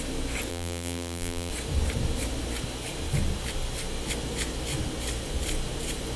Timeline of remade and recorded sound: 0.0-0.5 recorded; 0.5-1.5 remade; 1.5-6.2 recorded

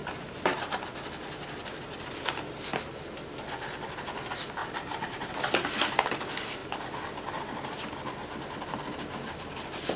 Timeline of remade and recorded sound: 0.0-4.6 recorded; 4.6-5.3 remade; 5.3-10.0 recorded

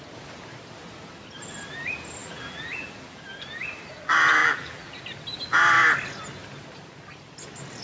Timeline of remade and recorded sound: 0.0-2.2 recorded; 2.2-3.2 remade; 3.2-4.4 recorded; 4.4-5.0 remade; 5.0-7.8 recorded